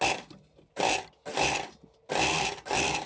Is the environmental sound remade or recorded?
recorded